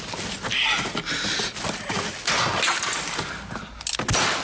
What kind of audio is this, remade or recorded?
recorded